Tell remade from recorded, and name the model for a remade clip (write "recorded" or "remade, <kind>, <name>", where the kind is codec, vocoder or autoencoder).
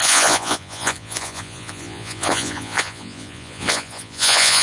remade, vocoder, Vocos